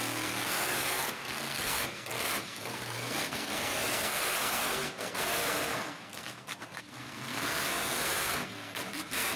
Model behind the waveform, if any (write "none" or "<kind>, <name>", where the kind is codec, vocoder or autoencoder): codec, SNAC